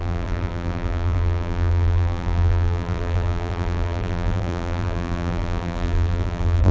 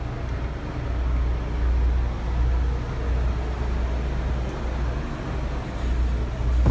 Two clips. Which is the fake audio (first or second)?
first